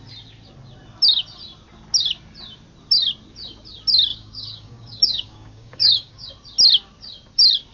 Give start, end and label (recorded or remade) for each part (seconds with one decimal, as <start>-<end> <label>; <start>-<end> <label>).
0.0-4.1 recorded; 4.1-6.3 remade; 6.3-7.7 recorded